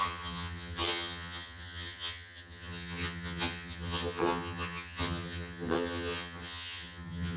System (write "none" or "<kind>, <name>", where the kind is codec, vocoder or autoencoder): vocoder, HiFi-GAN